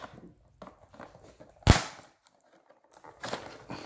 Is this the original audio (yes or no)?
yes